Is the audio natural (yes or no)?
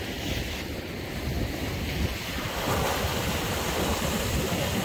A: yes